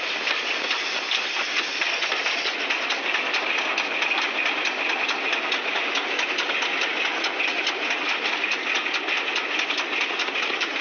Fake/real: real